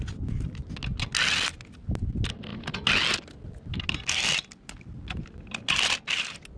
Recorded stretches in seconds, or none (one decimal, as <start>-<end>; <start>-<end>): 0.0-6.6